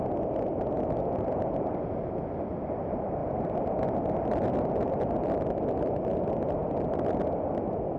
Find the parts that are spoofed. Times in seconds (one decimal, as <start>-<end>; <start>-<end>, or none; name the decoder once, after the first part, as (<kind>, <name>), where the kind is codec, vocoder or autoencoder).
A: none